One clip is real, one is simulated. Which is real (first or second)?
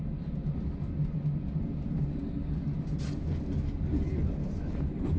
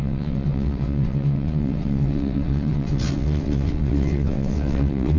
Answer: first